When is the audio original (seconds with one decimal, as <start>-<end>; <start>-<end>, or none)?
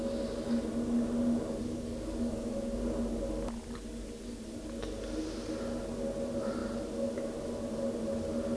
0.0-1.6; 2.5-8.6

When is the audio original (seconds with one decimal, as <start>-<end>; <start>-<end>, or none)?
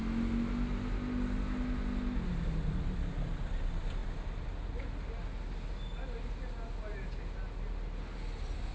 0.0-8.7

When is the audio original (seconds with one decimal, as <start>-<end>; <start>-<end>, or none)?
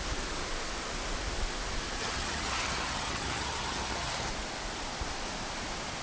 0.0-2.0; 4.3-6.0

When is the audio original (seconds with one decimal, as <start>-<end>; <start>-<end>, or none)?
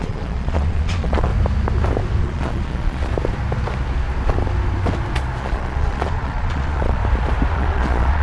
1.3-2.2; 3.1-5.4; 7.0-7.5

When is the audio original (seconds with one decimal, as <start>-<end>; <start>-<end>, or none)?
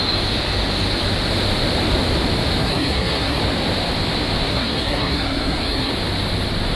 0.0-2.6; 3.4-4.5; 5.9-6.7